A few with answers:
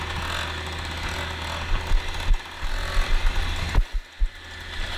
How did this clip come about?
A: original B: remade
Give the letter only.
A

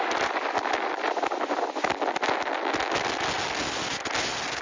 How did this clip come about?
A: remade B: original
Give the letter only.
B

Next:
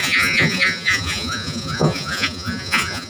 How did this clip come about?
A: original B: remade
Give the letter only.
B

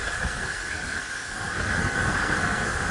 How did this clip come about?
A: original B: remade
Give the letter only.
B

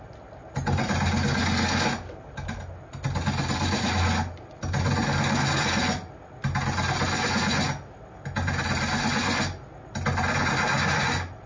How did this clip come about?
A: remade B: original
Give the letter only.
B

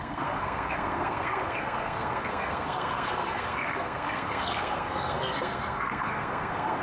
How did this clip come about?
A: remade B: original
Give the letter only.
A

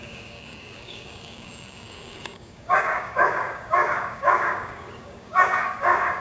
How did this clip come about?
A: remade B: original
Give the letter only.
A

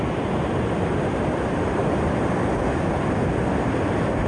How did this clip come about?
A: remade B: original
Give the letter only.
B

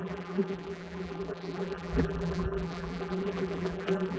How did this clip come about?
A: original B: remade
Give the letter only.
B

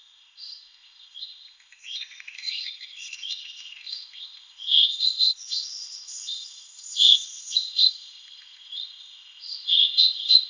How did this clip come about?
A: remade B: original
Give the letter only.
A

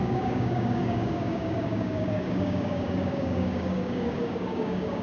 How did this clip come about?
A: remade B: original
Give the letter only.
A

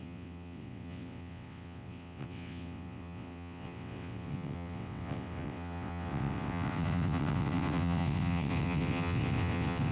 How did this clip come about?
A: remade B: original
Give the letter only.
A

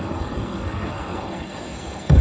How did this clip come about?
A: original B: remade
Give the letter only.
B